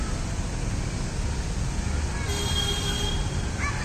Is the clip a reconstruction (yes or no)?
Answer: no